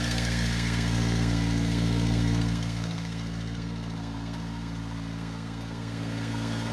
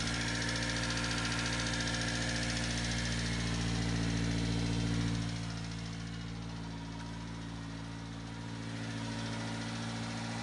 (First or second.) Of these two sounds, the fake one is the first